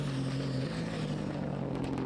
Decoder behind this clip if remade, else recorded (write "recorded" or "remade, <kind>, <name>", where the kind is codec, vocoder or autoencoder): recorded